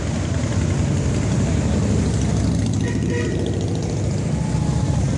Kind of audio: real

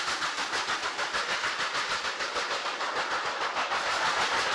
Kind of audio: real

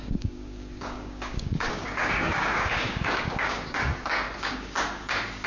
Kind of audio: fake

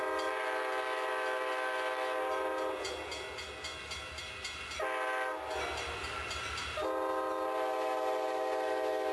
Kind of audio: real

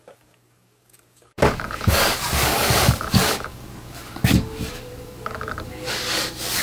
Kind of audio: fake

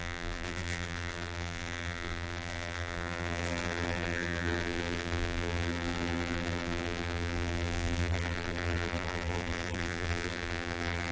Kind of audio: fake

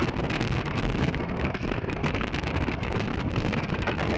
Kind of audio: fake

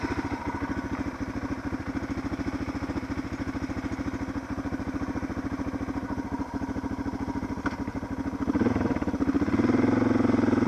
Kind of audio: real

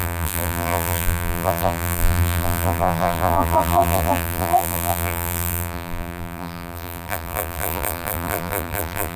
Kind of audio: fake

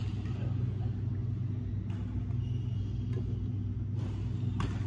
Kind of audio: real